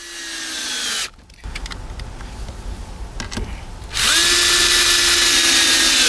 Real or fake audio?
real